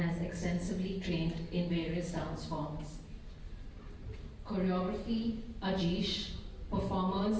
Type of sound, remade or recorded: recorded